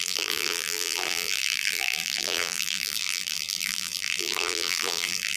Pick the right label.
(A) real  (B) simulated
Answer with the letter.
B